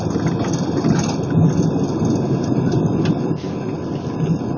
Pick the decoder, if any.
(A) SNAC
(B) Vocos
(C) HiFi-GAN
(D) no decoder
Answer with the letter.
D